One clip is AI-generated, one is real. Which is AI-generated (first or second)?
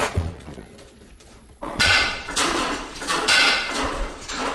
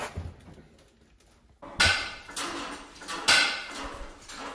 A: first